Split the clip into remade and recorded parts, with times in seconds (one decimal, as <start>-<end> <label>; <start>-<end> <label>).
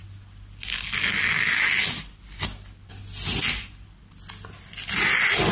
0.0-5.5 recorded